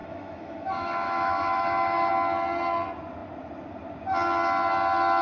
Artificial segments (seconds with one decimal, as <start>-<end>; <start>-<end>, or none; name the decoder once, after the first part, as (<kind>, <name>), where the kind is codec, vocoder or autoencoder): 0.0-2.1 (autoencoder, DAC-VAE)